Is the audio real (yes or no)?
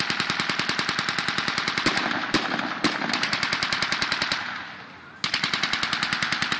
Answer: yes